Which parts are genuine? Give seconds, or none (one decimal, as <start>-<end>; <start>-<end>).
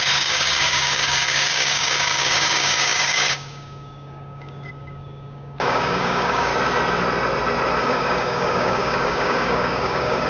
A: 6.5-7.8